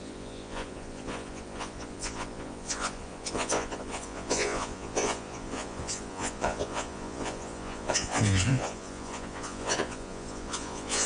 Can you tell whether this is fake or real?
fake